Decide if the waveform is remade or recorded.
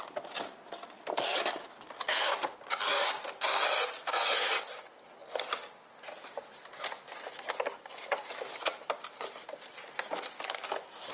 recorded